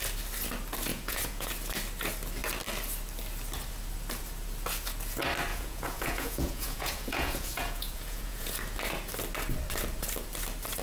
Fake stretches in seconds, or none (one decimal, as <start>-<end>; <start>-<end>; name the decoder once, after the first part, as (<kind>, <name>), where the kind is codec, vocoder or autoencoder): 0.9-1.5 (vocoder, Vocos); 5.5-8.5